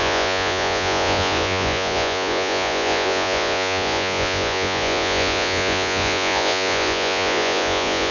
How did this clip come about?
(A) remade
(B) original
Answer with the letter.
A